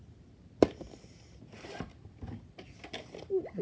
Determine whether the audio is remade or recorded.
recorded